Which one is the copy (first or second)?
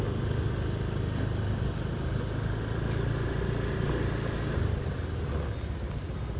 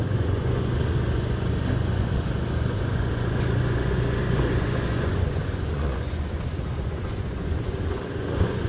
second